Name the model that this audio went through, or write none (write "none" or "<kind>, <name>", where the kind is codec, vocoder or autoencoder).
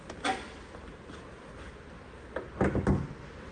none